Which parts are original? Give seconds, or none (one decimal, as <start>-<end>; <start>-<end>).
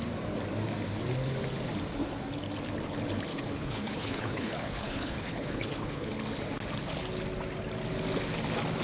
0.0-3.3; 6.1-8.8